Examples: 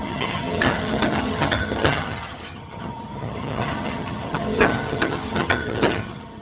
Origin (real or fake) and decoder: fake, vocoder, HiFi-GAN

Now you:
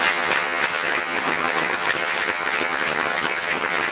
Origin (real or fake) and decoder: fake, vocoder, HiFi-GAN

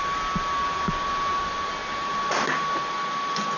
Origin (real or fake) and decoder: real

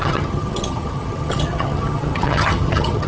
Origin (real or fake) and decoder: fake, vocoder, HiFi-GAN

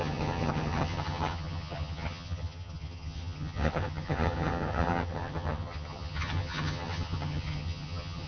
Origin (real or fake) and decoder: fake, vocoder, HiFi-GAN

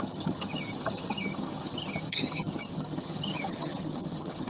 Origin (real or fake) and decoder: fake, vocoder, HiFi-GAN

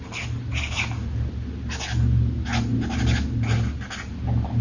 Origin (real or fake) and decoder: real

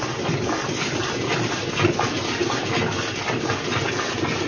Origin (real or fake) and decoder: real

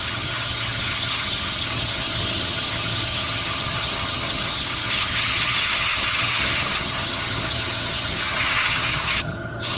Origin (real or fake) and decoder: fake, vocoder, HiFi-GAN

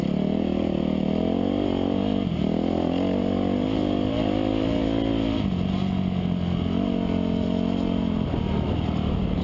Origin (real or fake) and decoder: real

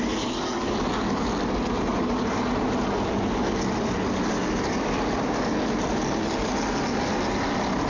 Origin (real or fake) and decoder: real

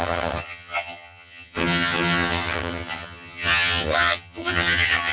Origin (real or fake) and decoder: fake, vocoder, HiFi-GAN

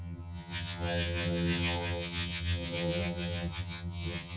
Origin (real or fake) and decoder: fake, vocoder, HiFi-GAN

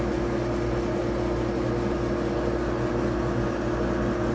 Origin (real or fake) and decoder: real